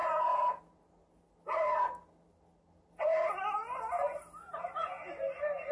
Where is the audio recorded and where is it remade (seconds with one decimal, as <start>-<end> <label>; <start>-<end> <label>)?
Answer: 0.0-0.6 remade; 0.6-5.7 recorded